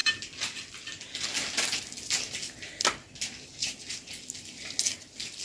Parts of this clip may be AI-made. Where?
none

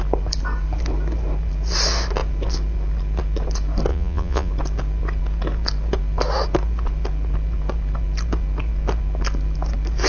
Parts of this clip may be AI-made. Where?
3.9-4.5 (vocoder, Vocos)

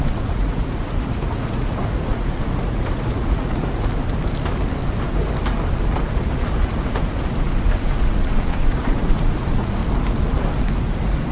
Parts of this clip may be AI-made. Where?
0.0-3.9 (vocoder, Vocos); 6.1-9.8; 10.9-11.3

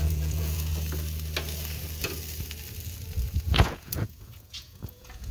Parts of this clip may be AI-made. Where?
0.0-0.7 (vocoder, Vocos); 3.5-5.3

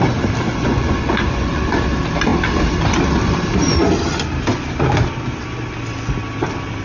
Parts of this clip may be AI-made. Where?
0.5-1.8 (vocoder, Vocos)

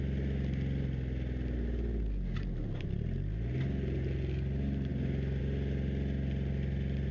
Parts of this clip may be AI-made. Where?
none

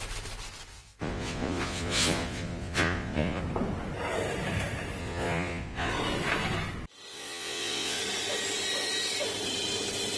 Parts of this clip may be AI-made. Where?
0.7-3.4 (vocoder, Vocos); 5.0-5.9; 7.1-8.0